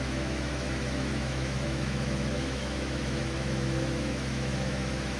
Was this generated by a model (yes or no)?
yes